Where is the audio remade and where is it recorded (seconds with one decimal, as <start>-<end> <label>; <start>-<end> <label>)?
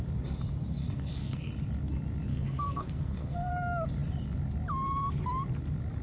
0.0-0.8 recorded; 0.8-1.5 remade; 1.5-2.3 recorded; 2.3-3.5 remade; 3.5-6.0 recorded